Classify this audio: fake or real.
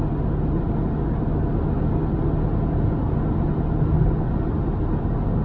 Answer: real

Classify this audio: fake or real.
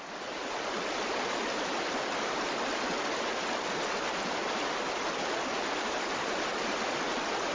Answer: real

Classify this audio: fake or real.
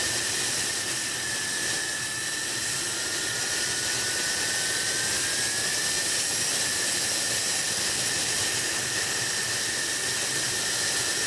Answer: real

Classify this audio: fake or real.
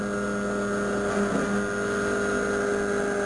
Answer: real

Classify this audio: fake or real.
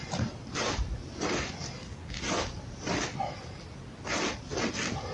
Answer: real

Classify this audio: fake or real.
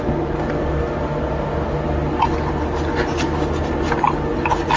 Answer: real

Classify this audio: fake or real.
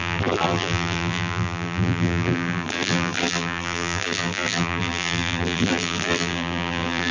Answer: fake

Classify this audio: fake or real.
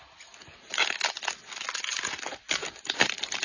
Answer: real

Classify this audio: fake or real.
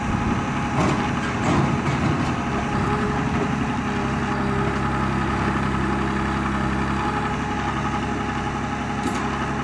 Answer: real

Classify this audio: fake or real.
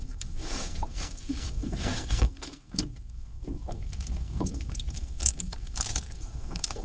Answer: fake